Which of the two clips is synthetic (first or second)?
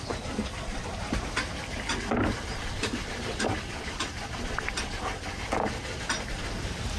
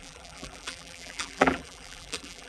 second